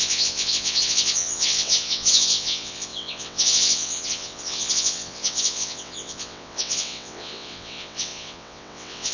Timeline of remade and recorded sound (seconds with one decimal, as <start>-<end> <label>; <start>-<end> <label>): 0.0-9.1 remade